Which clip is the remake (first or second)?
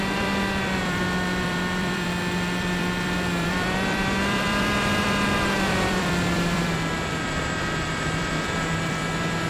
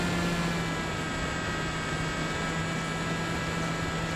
first